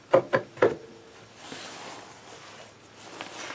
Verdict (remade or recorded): recorded